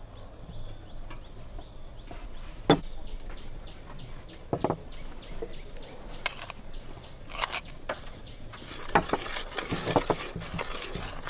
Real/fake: real